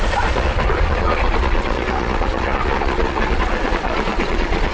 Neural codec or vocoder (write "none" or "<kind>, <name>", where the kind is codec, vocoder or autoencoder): vocoder, Vocos